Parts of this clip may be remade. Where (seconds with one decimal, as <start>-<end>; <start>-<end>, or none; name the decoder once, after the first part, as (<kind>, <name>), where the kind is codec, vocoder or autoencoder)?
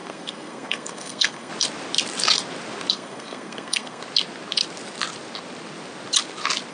0.0-1.5 (codec, SNAC); 2.9-4.0